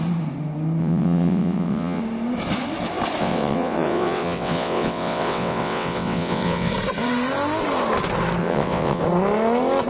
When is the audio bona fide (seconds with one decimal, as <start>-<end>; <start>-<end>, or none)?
0.0-0.8; 2.0-3.2; 6.7-8.4; 9.0-9.9